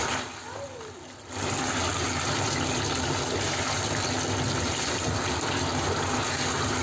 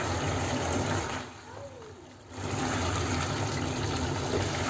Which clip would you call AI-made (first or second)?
second